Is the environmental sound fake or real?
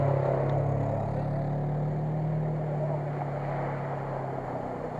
real